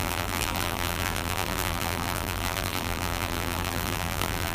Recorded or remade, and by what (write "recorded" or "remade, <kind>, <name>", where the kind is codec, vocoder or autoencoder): remade, vocoder, BigVGAN v2